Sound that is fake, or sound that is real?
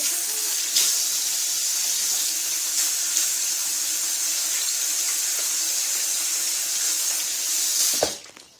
real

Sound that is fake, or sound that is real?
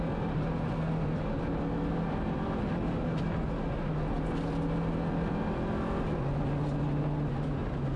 real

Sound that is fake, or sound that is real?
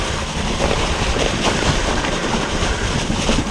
fake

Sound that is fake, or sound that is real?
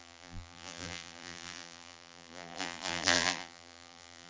fake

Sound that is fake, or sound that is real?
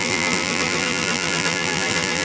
fake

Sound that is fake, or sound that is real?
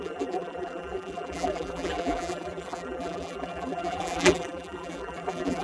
fake